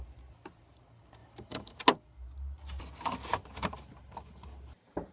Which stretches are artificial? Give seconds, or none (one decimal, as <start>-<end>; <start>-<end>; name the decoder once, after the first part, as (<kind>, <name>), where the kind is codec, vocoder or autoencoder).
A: 1.2-1.8 (vocoder, BigVGAN v2)